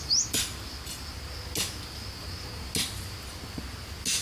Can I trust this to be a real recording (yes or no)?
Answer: yes